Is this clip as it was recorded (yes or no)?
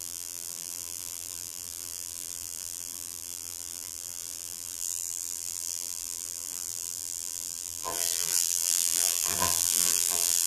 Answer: no